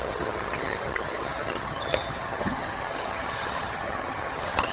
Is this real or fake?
fake